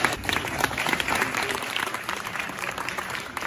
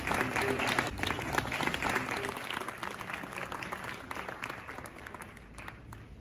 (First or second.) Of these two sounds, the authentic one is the second